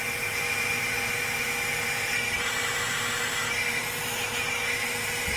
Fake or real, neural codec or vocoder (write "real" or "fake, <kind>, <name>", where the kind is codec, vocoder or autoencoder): real